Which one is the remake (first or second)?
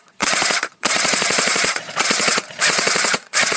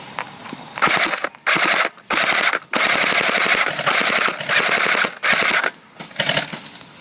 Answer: first